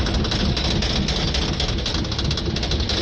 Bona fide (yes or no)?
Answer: yes